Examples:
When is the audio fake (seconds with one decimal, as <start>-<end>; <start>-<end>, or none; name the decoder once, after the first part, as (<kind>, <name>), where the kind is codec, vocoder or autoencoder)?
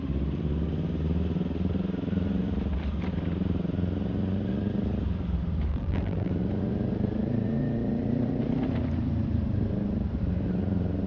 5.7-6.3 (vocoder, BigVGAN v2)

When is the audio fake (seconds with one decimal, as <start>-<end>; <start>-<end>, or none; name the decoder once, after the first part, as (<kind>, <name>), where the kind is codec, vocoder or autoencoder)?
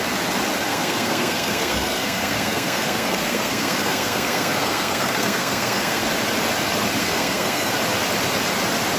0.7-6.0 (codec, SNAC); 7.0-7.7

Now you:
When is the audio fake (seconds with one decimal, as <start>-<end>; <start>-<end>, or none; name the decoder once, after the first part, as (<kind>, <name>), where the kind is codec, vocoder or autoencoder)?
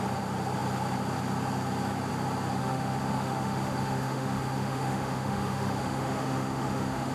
2.6-7.1 (autoencoder, DAC-VAE)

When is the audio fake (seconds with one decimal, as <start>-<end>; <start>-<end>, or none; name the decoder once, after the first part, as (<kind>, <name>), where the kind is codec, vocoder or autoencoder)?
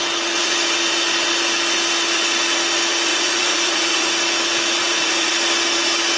3.1-4.1 (vocoder, Vocos); 4.8-5.3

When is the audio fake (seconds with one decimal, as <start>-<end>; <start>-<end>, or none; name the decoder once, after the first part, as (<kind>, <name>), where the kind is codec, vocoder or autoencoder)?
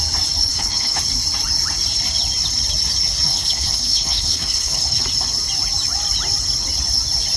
0.4-1.0 (codec, HILCodec); 3.3-5.0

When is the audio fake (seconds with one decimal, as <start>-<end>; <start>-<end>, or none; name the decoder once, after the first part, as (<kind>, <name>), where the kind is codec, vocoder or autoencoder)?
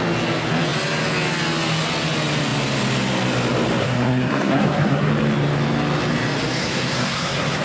3.8-5.1 (codec, SNAC); 6.6-7.6